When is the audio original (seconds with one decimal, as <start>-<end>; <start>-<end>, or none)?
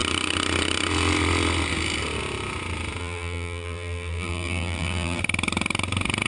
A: 0.0-3.0; 5.2-6.3